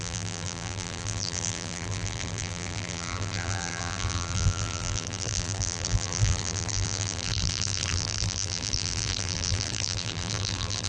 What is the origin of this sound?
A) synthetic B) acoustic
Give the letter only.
A